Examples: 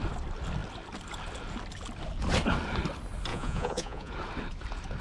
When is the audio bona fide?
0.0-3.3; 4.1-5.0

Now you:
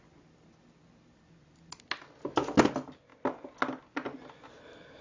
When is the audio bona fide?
0.0-5.0

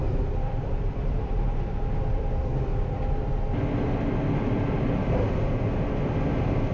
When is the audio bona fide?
3.3-6.7

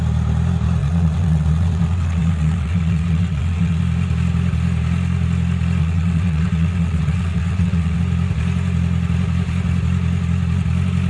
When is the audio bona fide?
0.0-0.8; 3.8-5.8; 8.0-11.1